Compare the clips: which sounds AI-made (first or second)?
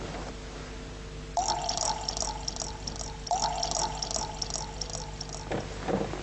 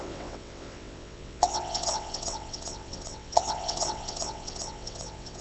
second